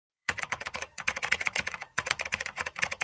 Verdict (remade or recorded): remade